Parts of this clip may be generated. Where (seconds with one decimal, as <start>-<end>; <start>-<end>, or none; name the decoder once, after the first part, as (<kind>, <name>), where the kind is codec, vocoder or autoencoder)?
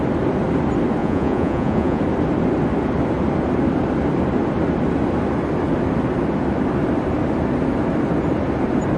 1.0-2.0 (vocoder, Vocos)